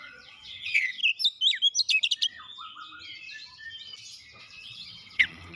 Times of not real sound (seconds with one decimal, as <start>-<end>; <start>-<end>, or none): 0.0-1.0; 4.4-5.6